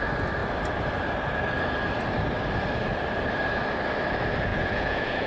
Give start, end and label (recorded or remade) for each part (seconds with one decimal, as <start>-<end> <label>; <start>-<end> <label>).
0.0-4.5 recorded; 4.5-5.3 remade